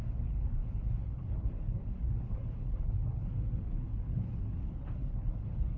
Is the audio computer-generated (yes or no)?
yes